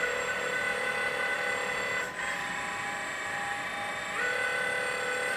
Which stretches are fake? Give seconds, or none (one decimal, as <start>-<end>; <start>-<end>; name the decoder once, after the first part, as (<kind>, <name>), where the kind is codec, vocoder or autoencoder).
0.0-5.4 (vocoder, BigVGAN v2)